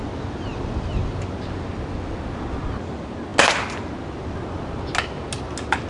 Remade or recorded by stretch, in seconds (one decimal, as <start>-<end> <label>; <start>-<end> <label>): 0.0-5.9 recorded